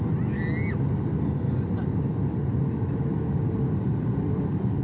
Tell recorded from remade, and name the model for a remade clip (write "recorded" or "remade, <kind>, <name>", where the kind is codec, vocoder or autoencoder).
recorded